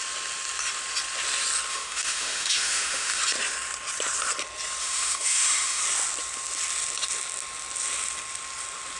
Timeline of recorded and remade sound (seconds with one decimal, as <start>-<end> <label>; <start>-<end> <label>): 0.0-1.7 recorded; 1.7-3.2 remade; 3.2-4.8 recorded; 4.8-5.8 remade; 5.8-9.0 recorded